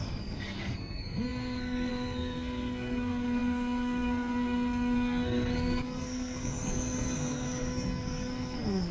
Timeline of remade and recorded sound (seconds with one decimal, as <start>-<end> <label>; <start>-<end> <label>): 0.0-8.9 remade

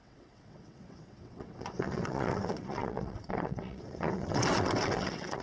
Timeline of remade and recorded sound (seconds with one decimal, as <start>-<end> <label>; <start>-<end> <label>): 0.0-5.4 remade

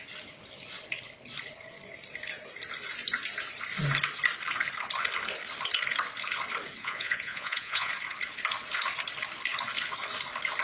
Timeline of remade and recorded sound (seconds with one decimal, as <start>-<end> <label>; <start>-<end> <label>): 0.0-6.8 recorded; 6.8-7.9 remade; 7.9-10.6 recorded

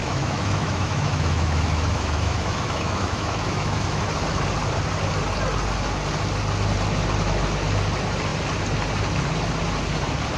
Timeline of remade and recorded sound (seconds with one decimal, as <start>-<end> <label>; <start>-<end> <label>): 0.0-4.0 remade; 4.0-10.4 recorded

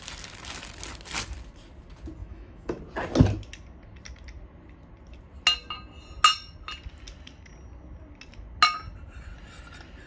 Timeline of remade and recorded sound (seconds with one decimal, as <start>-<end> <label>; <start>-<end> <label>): 0.0-2.2 recorded; 2.2-2.8 remade; 2.8-10.1 recorded

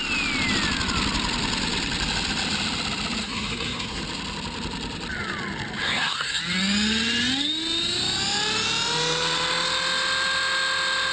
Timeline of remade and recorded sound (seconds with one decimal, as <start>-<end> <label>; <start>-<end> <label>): 0.0-3.2 recorded; 3.2-4.0 remade; 4.0-5.8 recorded; 5.8-6.4 remade; 6.4-11.1 recorded